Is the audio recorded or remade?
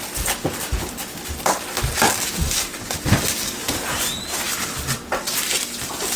recorded